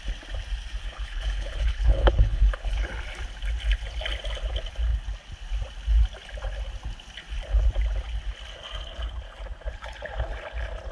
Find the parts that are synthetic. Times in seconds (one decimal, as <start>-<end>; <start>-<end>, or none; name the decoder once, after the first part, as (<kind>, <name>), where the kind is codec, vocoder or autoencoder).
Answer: 0.8-2.9 (codec, HILCodec)